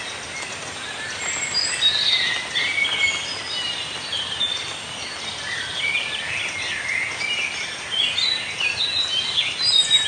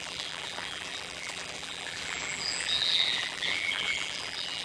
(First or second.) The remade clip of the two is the second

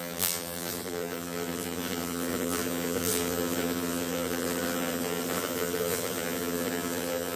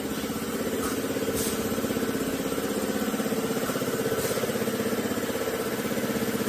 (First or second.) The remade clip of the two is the first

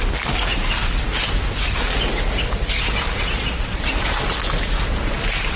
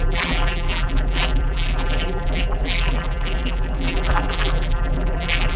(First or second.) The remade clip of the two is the second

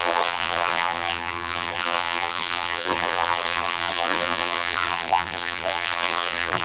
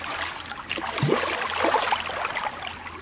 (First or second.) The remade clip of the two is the first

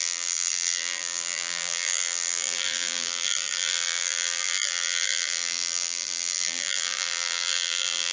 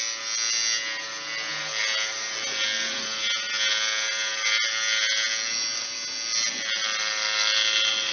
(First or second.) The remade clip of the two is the first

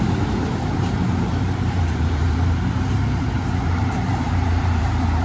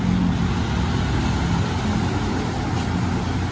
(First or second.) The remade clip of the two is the first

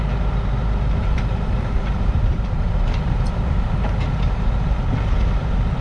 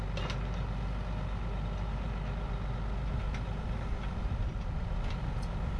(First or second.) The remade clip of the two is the first